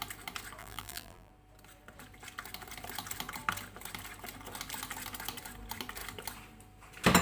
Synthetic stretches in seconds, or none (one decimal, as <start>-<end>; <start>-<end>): 0.6-1.3